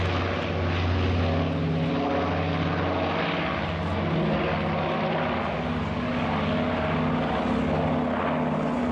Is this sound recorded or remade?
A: recorded